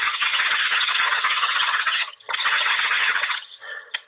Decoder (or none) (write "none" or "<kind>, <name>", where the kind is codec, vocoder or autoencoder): vocoder, HiFi-GAN